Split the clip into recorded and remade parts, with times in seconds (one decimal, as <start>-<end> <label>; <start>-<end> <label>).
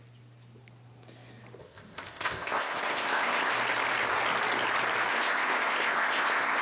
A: 0.0-1.6 recorded; 1.6-3.5 remade; 3.5-5.1 recorded; 5.1-6.6 remade